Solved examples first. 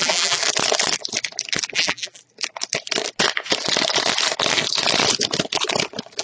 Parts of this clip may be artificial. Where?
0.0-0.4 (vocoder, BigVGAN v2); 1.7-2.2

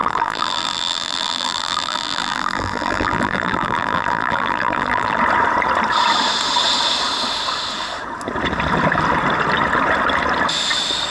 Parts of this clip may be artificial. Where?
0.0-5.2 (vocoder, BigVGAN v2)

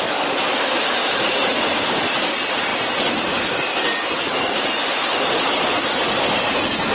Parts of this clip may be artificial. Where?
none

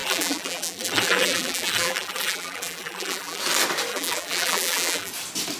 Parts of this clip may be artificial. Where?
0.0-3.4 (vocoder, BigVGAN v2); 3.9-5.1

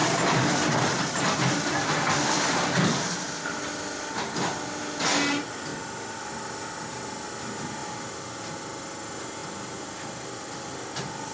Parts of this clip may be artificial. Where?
0.0-4.8 (vocoder, BigVGAN v2); 5.7-6.3; 7.8-8.8; 9.4-10.7

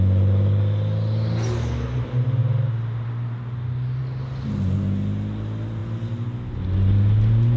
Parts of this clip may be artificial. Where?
none